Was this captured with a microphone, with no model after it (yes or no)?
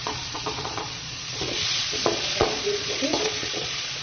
no